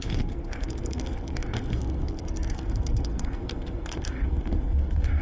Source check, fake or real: fake